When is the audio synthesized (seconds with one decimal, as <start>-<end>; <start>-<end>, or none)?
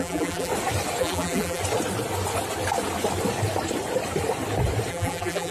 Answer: 0.0-0.5; 1.0-1.6; 4.9-5.5